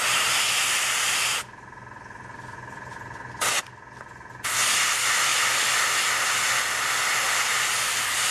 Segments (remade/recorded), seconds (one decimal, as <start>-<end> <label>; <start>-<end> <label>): 0.0-8.3 recorded